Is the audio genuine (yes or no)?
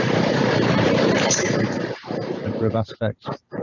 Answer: no